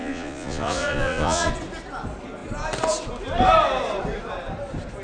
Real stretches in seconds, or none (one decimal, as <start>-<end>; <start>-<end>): 1.5-5.0